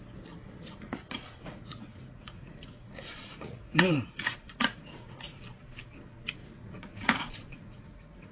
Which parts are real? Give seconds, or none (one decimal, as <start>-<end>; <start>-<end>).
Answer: 0.0-0.6; 5.4-6.4